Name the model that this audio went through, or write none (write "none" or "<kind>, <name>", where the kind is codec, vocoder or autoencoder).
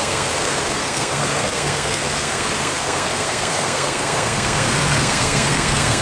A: codec, SNAC